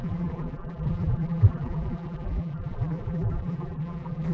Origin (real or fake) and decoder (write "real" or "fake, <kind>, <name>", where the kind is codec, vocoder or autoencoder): fake, vocoder, BigVGAN v2